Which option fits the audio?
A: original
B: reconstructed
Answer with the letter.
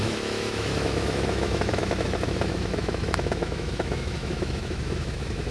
B